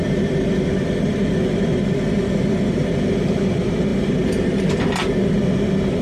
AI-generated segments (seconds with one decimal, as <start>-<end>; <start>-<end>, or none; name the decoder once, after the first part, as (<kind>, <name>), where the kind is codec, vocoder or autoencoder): none